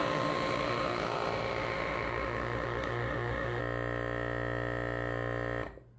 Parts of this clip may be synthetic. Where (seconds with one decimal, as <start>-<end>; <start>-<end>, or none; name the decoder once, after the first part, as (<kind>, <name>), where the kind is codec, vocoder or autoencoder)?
0.0-3.6 (autoencoder, DAC-VAE)